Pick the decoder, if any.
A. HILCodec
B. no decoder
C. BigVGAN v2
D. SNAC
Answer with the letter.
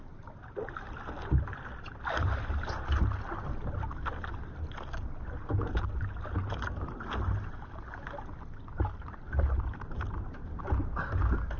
B